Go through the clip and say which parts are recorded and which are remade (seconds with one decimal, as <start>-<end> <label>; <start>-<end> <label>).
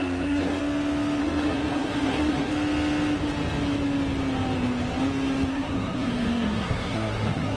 0.0-0.6 remade; 0.6-1.2 recorded; 1.2-2.5 remade; 2.5-5.5 recorded; 5.5-7.6 remade